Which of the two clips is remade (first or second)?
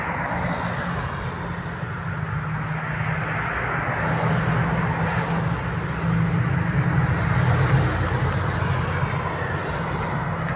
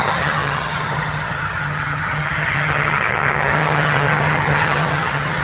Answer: second